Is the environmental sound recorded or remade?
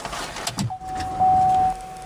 recorded